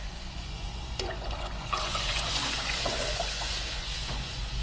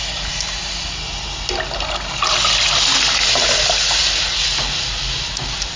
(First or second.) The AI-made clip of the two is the first